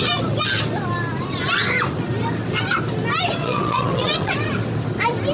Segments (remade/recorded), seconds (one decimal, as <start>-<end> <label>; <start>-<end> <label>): 0.0-3.4 recorded; 3.4-4.3 remade; 4.3-5.3 recorded